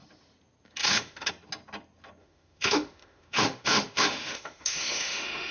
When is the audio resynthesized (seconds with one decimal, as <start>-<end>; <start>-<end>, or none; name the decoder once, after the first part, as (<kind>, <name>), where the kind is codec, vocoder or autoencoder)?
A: 0.8-1.3 (autoencoder, DAC-VAE); 2.2-5.5